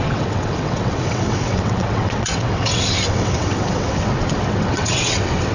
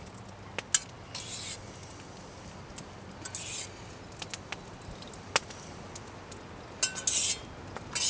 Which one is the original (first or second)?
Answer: second